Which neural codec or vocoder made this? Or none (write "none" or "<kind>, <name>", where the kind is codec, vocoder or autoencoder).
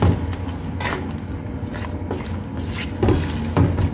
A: none